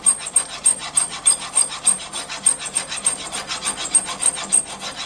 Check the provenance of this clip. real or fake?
real